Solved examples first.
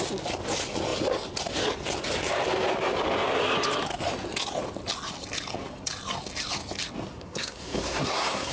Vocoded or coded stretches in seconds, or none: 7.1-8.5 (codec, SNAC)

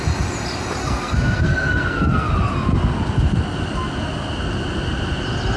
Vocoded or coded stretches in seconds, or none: 0.8-2.3 (codec, SNAC)

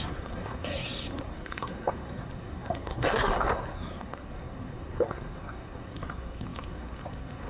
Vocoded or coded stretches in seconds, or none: 0.0-7.5 (codec, SNAC)

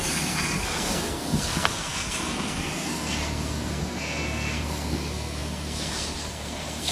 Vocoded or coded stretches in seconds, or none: 0.0-6.9 (codec, SNAC)

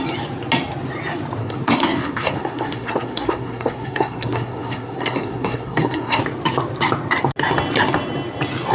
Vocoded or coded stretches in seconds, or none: 1.4-6.2 (codec, SNAC)

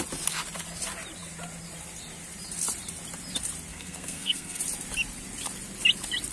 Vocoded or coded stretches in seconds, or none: 3.7-4.6 (codec, SNAC)

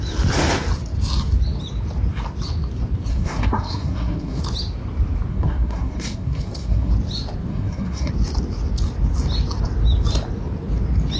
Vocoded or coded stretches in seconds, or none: 3.1-4.4 (codec, SNAC); 5.3-6.9; 7.5-8.1

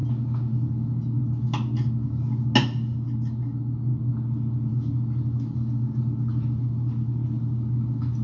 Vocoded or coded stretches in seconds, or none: none